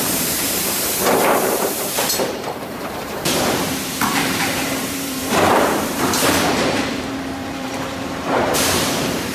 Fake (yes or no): yes